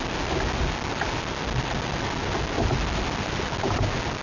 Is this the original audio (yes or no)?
yes